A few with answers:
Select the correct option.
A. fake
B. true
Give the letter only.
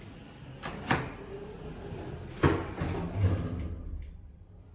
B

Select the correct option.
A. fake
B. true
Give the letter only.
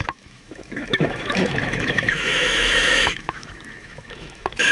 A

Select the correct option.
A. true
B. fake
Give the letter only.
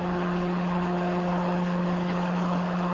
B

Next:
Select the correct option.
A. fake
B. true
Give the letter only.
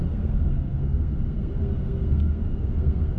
A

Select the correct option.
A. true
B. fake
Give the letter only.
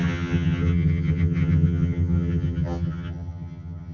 B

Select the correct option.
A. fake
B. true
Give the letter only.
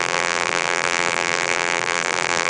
A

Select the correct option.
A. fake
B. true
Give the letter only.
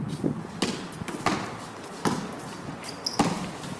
B